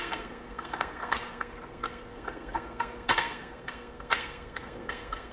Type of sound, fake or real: fake